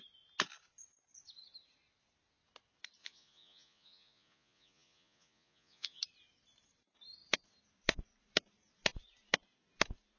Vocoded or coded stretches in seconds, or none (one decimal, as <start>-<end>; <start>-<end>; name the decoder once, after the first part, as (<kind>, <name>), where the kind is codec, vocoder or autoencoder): 3.0-6.0 (vocoder, Vocos)